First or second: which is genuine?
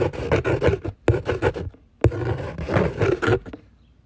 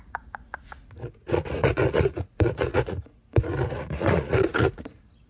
first